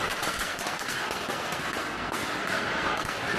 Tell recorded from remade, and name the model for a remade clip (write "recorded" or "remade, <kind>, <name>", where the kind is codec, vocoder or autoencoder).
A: remade, codec, SNAC